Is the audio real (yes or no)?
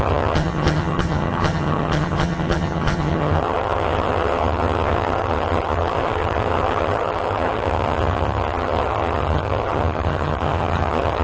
no